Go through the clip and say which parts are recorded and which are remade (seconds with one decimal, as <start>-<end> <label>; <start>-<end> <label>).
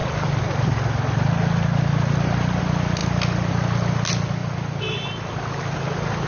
0.0-6.3 recorded